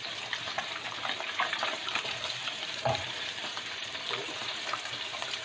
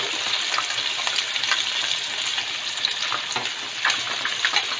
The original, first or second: second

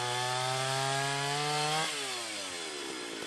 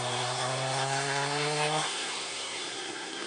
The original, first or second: first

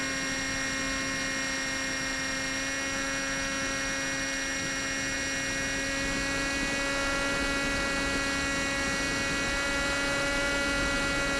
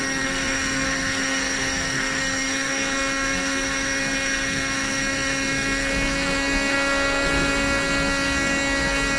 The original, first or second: first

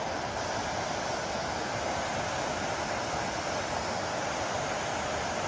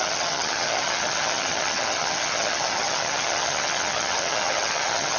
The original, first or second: first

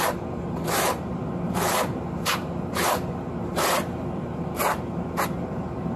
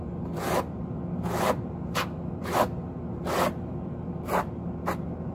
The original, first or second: second